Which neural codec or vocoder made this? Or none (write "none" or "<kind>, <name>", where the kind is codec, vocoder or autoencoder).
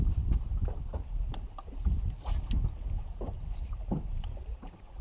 none